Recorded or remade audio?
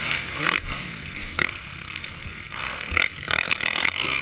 remade